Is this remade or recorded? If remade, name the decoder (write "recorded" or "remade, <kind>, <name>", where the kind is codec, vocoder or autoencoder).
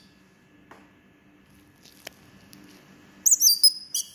recorded